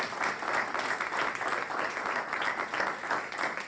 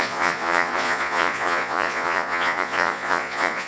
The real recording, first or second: first